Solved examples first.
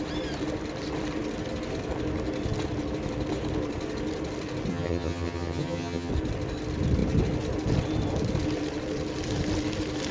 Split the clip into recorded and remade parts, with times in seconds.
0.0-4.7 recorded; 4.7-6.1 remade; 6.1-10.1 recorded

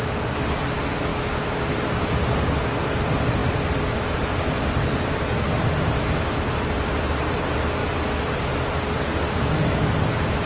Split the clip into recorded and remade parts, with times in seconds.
0.0-10.5 recorded